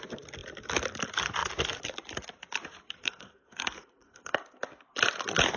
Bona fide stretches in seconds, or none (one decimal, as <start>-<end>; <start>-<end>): 0.0-3.0; 4.6-5.6